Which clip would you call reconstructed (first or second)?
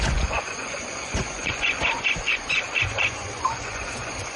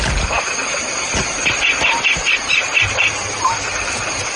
first